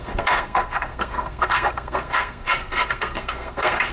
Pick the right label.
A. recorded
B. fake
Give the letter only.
B